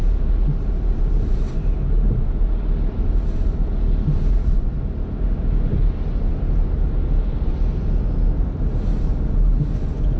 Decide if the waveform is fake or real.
real